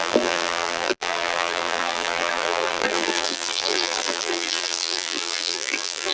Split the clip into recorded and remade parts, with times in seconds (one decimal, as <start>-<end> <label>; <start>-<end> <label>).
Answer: 0.0-6.1 remade